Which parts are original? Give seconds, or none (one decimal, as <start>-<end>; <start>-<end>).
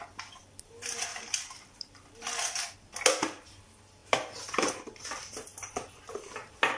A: 0.0-1.1; 2.1-4.0; 4.7-6.8